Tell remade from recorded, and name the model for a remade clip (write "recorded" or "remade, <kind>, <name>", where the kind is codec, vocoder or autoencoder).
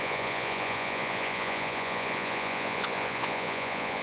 remade, vocoder, Vocos